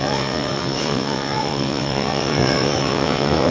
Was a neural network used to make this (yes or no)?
yes